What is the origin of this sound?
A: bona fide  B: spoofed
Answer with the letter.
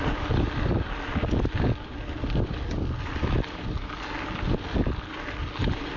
A